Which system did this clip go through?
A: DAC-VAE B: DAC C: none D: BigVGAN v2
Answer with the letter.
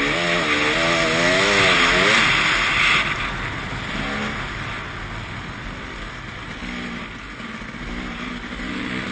C